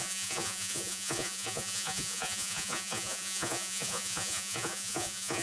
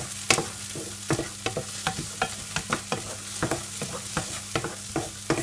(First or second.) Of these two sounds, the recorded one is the second